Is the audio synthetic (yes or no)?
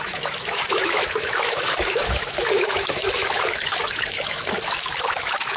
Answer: yes